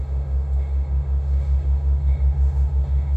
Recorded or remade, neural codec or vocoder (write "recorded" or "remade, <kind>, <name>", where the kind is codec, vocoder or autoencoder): remade, autoencoder, DAC-VAE